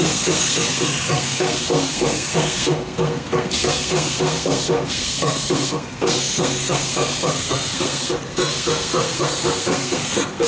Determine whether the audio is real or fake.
fake